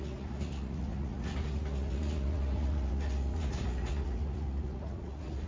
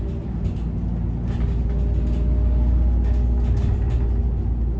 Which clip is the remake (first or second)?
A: first